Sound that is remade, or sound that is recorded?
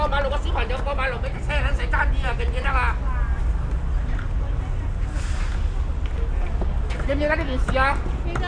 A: recorded